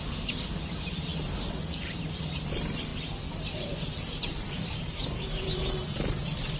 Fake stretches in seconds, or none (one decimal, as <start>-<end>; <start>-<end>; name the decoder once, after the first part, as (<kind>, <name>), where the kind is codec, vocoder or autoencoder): 0.0-2.9 (vocoder, BigVGAN v2); 3.7-6.6